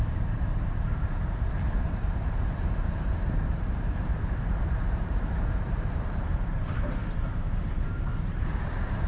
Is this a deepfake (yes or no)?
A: yes